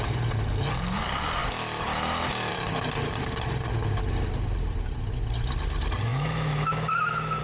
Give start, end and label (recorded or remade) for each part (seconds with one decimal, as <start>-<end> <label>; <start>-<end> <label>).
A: 0.0-6.1 recorded; 6.1-7.4 remade